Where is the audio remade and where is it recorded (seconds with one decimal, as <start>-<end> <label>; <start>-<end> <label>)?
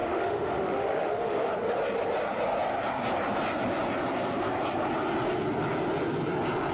0.0-1.5 remade; 1.5-6.7 recorded